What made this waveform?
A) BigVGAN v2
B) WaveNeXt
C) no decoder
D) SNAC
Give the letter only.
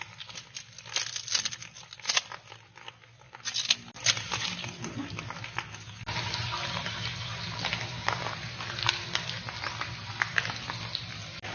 C